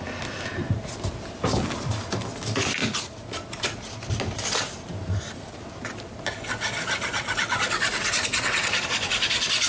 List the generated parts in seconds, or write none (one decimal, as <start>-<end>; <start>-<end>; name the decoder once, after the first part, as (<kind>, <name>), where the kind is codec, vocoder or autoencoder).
8.1-8.7 (vocoder, WaveNeXt)